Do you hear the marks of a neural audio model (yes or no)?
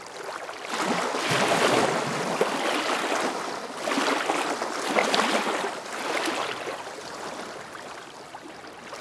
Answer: no